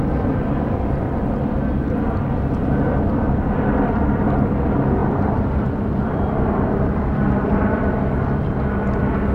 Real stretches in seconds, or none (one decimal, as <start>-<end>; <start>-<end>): 0.0-5.0; 8.6-9.3